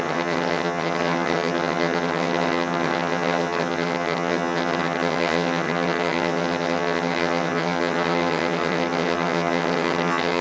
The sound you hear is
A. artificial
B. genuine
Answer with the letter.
A